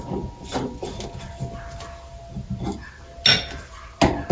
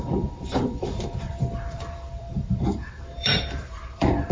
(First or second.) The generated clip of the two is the second